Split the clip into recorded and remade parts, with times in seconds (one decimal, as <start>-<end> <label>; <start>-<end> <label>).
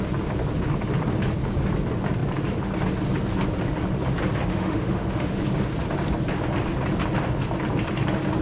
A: 0.0-4.5 recorded; 4.5-5.4 remade; 5.4-8.4 recorded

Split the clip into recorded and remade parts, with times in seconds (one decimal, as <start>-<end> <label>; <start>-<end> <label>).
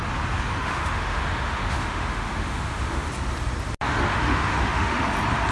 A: 0.0-0.6 recorded; 0.6-3.1 remade; 3.1-4.1 recorded; 4.1-5.1 remade; 5.1-5.5 recorded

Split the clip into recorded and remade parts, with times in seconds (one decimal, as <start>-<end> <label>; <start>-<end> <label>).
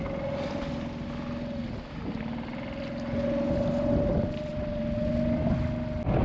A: 0.0-6.2 recorded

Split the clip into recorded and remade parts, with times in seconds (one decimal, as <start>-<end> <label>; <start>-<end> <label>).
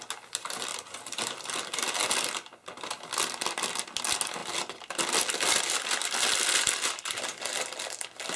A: 0.0-8.4 recorded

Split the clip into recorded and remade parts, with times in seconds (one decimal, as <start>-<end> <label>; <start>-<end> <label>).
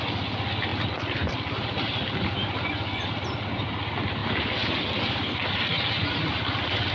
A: 0.0-6.9 recorded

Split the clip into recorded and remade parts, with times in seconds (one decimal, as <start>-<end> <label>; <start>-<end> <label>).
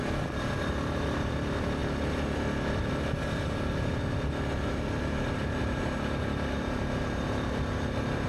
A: 0.0-8.3 recorded